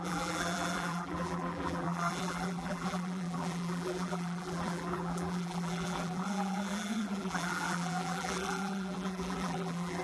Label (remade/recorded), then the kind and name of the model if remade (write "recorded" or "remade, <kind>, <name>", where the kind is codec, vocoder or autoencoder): remade, vocoder, BigVGAN v2